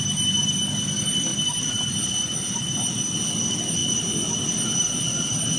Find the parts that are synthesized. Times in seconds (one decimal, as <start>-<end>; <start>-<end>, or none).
none

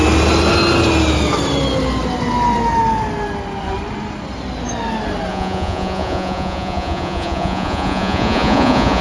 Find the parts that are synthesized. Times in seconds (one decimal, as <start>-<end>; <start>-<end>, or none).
5.3-9.0